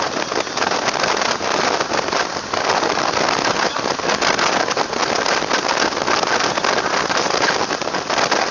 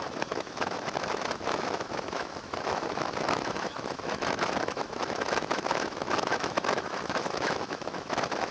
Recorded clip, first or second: first